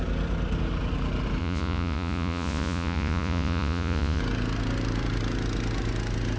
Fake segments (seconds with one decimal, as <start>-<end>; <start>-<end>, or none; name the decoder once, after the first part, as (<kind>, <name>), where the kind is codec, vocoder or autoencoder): 1.4-4.2 (vocoder, Vocos)